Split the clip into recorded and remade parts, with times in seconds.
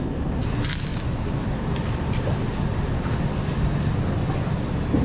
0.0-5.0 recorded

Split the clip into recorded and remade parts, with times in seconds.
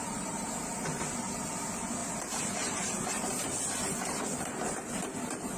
0.0-1.5 remade; 1.5-2.0 recorded; 2.0-4.1 remade; 4.1-5.6 recorded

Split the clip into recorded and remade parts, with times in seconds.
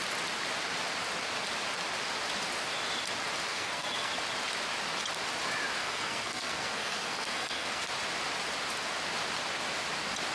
0.0-3.5 recorded; 3.5-4.1 remade; 4.1-5.8 recorded; 5.8-7.9 remade; 7.9-10.3 recorded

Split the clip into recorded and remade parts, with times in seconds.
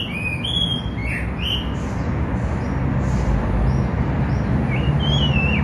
0.0-5.6 recorded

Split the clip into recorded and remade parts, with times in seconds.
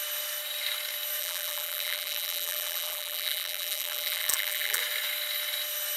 0.0-1.2 recorded; 1.2-4.8 remade; 4.8-6.0 recorded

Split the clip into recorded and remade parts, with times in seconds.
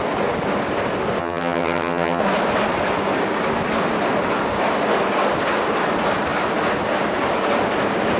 0.0-1.2 recorded; 1.2-2.2 remade; 2.2-8.2 recorded